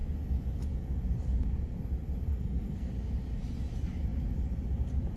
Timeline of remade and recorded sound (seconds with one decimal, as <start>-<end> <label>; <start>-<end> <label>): 0.0-2.3 recorded; 2.3-2.9 remade; 2.9-5.2 recorded